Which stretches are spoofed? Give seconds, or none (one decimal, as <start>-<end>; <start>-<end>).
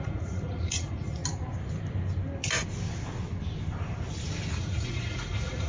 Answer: 0.0-1.2; 4.6-5.7